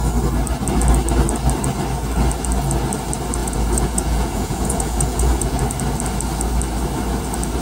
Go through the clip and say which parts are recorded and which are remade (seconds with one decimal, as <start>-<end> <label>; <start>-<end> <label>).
0.0-3.4 recorded; 3.4-5.6 remade; 5.6-7.6 recorded